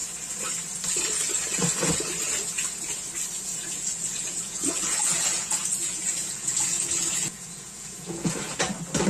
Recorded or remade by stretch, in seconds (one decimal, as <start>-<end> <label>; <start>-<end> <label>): 0.0-3.5 recorded; 3.5-8.3 remade; 8.3-9.1 recorded